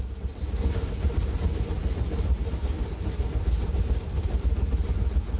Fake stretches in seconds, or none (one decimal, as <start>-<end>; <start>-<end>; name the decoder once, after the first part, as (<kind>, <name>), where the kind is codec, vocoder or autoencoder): none